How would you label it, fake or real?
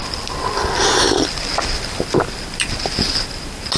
real